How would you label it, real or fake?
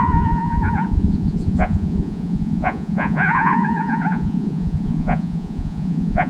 fake